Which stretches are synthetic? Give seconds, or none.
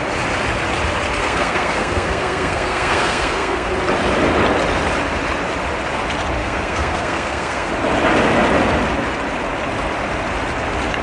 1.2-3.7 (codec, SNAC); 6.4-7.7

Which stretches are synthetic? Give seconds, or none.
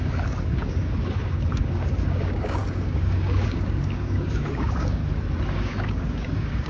0.0-5.0 (codec, DAC); 5.5-6.7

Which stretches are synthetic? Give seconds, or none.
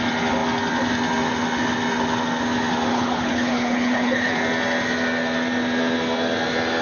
2.9-4.3 (codec, HILCodec)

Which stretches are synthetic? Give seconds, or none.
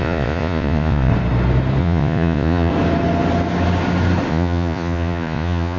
0.0-1.1 (vocoder, Vocos); 1.8-2.7; 4.3-5.8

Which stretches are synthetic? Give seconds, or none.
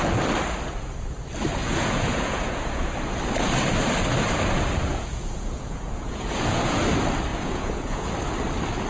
1.6-2.9 (vocoder, Vocos); 4.9-6.8; 7.3-8.1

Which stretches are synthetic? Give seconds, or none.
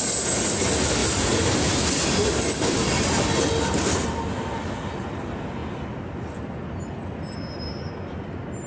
none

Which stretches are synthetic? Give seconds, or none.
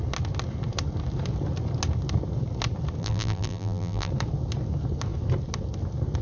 3.0-4.1 (vocoder, BigVGAN v2)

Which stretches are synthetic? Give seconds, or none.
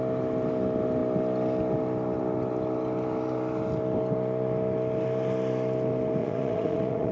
6.2-7.1 (vocoder, Vocos)